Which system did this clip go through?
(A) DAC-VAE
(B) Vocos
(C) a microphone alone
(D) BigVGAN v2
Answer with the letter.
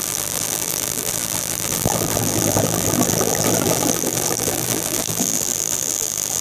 D